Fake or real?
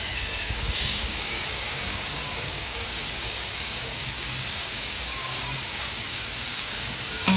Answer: fake